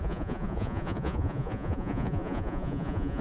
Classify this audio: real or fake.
fake